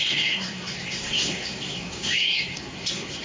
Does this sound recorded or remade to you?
remade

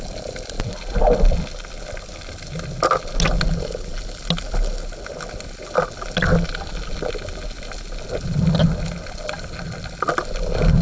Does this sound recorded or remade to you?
recorded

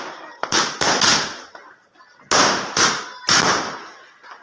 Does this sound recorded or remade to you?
recorded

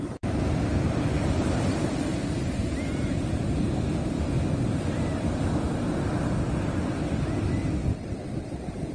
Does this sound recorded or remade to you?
recorded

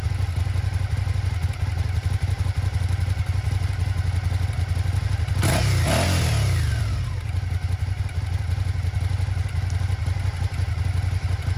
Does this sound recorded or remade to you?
recorded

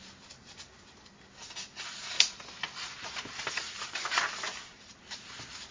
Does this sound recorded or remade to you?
recorded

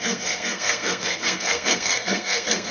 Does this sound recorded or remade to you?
remade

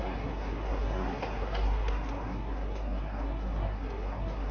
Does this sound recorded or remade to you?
remade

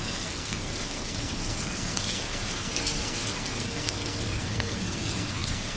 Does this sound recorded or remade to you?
remade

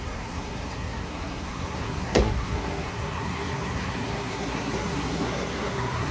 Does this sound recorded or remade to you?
remade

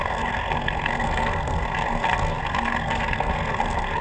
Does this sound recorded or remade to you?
remade